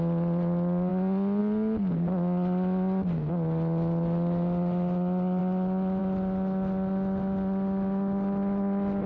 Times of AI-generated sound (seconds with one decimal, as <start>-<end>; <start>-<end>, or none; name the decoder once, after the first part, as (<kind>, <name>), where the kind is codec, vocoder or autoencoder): none